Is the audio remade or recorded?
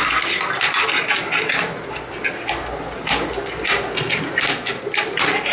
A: recorded